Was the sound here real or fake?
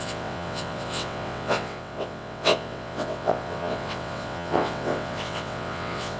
fake